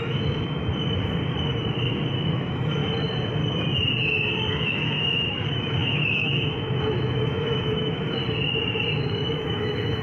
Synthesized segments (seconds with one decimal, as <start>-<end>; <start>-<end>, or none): 0.0-0.7; 2.2-2.8; 4.5-8.2; 9.0-10.0